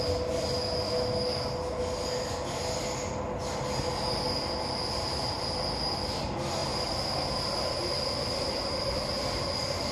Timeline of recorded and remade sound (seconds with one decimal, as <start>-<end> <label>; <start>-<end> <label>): 0.0-9.9 recorded